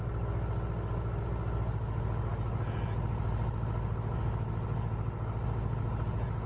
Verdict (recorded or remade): recorded